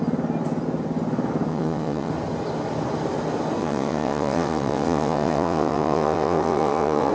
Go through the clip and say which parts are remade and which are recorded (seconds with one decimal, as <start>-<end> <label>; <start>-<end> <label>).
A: 0.0-1.5 recorded; 1.5-2.1 remade; 2.1-3.6 recorded; 3.6-7.1 remade